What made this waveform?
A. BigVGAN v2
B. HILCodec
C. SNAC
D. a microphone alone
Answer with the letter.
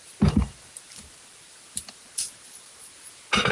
D